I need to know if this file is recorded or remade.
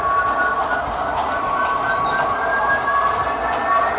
recorded